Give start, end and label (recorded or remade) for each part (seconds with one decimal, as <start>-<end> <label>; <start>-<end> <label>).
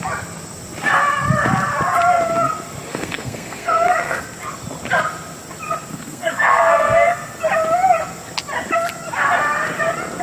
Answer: 0.0-2.9 recorded; 2.9-4.2 remade; 4.2-5.9 recorded; 5.9-7.4 remade; 7.4-10.2 recorded